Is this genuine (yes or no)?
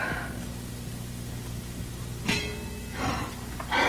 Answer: yes